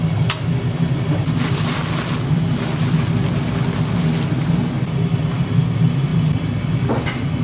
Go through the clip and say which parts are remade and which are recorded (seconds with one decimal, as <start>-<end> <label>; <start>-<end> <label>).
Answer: 0.0-7.4 recorded